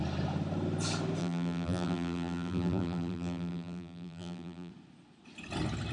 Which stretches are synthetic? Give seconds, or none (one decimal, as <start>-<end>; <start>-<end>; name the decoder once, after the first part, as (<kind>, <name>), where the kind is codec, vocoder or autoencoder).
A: 1.2-4.7 (vocoder, BigVGAN v2)